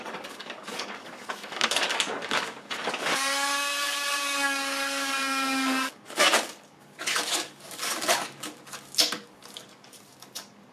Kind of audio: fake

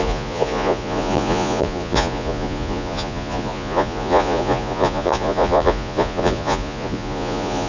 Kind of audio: fake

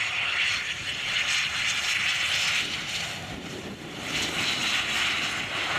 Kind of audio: real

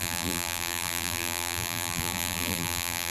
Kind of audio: fake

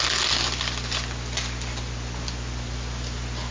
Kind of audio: real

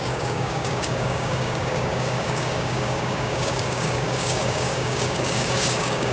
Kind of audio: fake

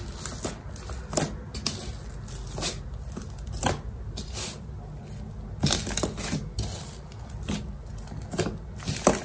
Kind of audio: real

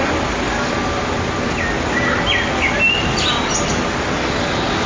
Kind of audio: real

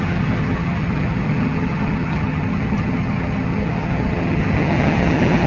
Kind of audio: fake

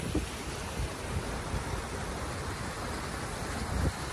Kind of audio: real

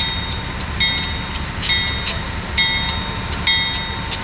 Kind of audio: real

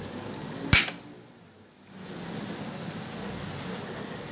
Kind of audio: real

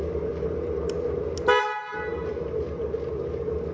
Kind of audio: real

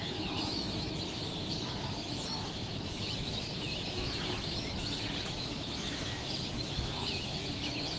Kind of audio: fake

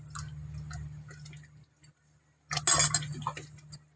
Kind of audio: real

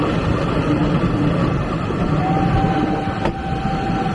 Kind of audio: real